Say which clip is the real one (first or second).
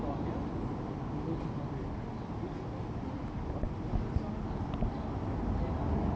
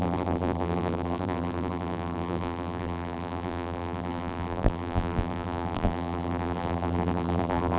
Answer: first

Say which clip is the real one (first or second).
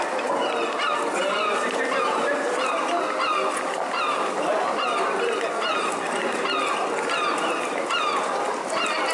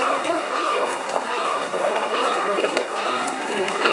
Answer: first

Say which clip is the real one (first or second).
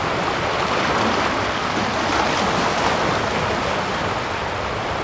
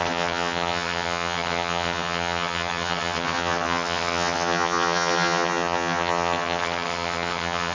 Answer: first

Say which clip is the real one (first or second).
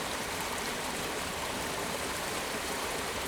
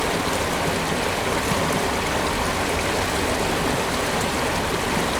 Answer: second